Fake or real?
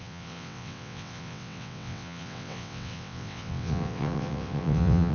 fake